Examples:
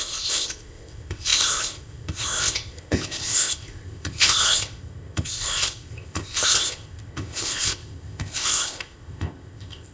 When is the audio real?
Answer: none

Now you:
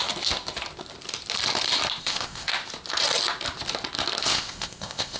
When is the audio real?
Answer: 0.0-2.0; 2.5-4.2

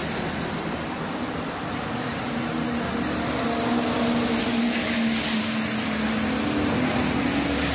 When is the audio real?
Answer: 0.0-7.7

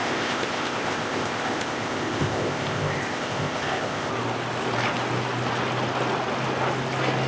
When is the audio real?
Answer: 4.1-7.3

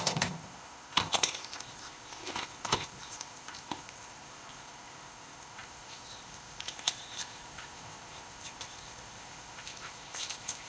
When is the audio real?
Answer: none

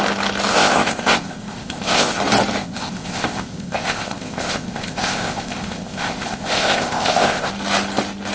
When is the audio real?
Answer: 0.0-0.5; 2.2-2.6; 7.5-8.3

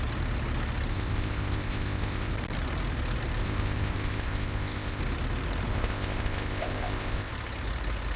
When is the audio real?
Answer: 0.0-0.9; 2.3-3.4; 5.0-5.7; 7.3-8.2

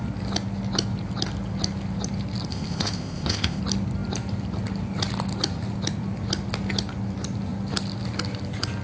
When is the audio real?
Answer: 0.0-2.5; 3.6-8.8